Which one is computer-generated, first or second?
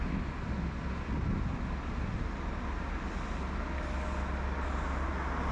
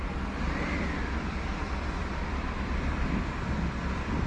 second